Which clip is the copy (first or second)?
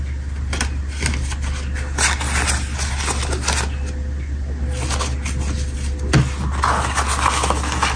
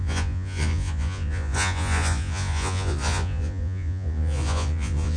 second